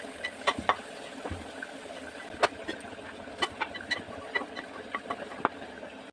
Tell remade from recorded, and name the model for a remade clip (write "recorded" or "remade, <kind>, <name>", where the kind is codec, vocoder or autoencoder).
recorded